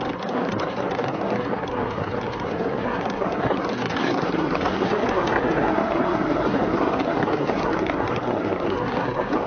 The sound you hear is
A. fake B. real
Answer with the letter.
A